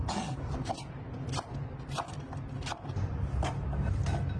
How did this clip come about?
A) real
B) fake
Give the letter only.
A